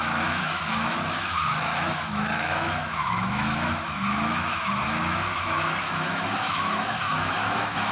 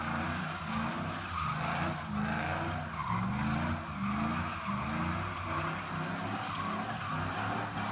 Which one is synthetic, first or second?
first